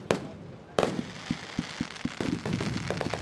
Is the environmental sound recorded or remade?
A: recorded